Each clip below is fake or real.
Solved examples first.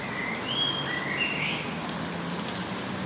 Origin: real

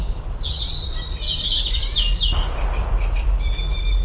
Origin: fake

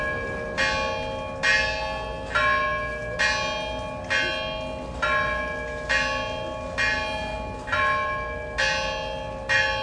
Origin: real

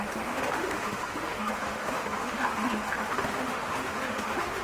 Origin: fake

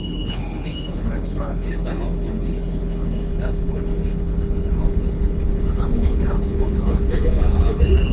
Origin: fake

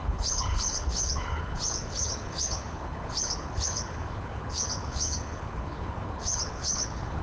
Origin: fake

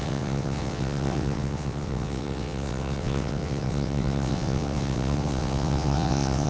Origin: fake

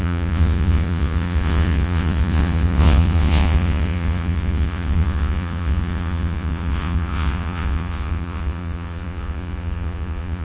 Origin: fake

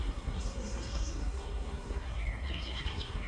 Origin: fake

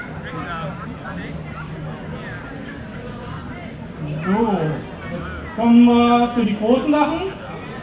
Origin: real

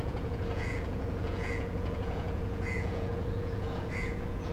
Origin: fake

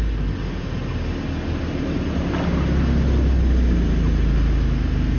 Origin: real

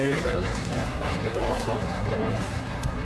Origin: fake